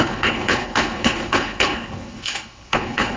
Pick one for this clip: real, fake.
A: fake